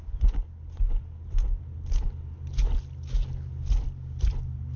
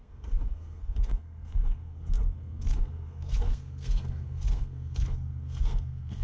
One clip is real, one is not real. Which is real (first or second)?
first